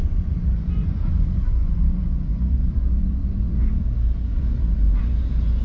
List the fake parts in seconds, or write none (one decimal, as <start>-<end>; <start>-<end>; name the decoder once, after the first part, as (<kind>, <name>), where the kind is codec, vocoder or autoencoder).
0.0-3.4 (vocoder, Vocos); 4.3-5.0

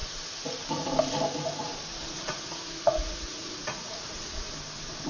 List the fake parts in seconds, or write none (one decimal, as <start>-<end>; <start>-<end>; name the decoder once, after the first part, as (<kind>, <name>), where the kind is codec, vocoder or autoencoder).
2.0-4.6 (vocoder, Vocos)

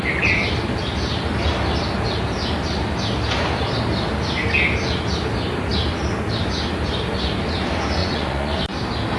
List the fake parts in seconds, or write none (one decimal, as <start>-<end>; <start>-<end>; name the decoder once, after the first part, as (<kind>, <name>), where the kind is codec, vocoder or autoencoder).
8.0-8.6 (vocoder, Vocos)

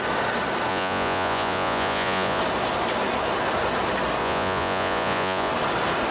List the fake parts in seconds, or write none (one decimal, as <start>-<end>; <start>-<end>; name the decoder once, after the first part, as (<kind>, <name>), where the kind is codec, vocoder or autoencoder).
0.7-2.4 (vocoder, Vocos); 4.2-5.5